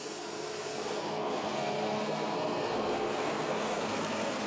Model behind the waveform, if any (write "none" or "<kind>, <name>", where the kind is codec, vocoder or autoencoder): codec, SNAC